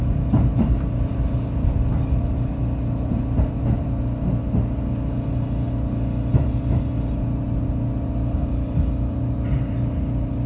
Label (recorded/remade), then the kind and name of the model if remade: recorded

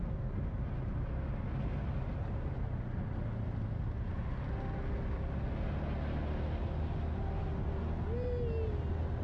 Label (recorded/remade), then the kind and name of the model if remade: recorded